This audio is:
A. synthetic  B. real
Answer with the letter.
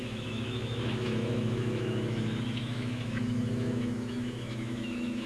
A